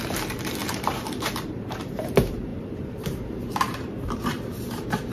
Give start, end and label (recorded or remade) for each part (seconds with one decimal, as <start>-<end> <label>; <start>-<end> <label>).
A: 0.0-0.6 recorded; 0.6-2.1 remade; 2.1-2.5 recorded; 2.5-5.1 remade